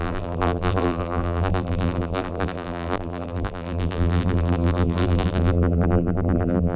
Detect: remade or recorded remade